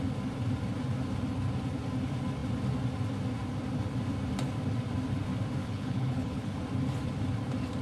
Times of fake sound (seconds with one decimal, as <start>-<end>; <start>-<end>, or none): 5.6-6.5